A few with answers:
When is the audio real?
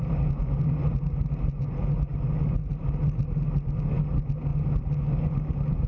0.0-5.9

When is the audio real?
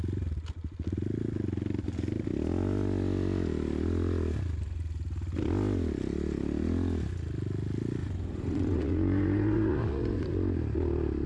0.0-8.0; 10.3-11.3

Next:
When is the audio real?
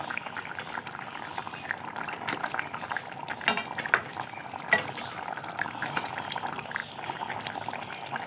0.0-8.3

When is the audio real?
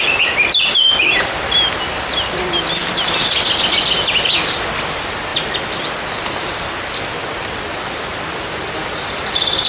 0.0-9.7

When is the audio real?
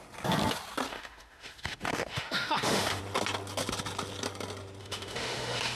0.0-0.9; 3.0-4.8